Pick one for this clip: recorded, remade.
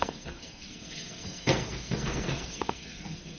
remade